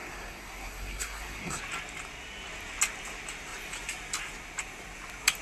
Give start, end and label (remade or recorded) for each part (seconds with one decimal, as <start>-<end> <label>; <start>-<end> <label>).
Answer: 0.0-1.6 remade; 1.6-5.4 recorded